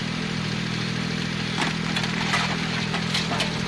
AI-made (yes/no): yes